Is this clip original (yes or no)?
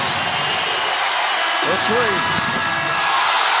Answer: yes